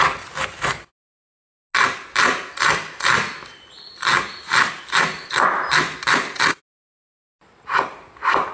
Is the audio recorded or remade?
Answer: recorded